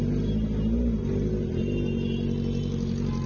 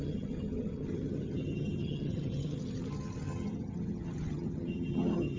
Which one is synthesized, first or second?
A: second